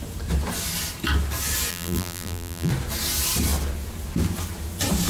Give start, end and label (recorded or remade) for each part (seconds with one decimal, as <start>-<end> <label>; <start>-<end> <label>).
0.0-1.7 recorded; 1.7-2.7 remade; 2.7-5.1 recorded